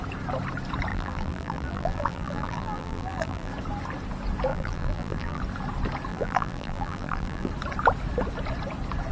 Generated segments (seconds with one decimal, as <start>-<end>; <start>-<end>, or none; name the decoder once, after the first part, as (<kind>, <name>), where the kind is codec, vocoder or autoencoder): 0.9-3.5 (vocoder, BigVGAN v2); 4.5-5.4; 6.1-7.5